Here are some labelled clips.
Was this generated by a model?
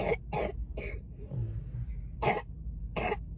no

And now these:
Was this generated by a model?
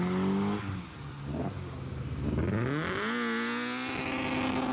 no